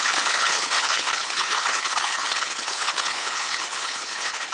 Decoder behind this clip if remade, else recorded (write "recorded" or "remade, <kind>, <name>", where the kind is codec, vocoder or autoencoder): remade, codec, HILCodec